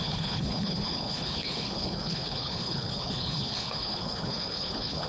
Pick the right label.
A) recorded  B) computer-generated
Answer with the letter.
B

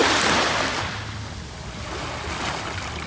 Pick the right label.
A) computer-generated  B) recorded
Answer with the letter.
B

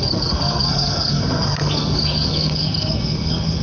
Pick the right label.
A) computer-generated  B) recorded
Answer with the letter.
A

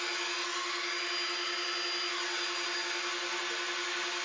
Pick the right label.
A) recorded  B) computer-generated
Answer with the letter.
A